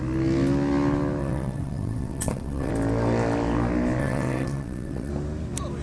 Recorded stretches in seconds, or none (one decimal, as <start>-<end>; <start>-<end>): 0.0-1.2; 2.7-4.0; 5.1-5.8